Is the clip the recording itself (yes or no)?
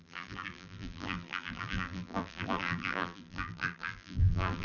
no